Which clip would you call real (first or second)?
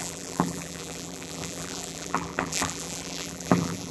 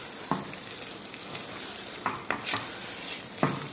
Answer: second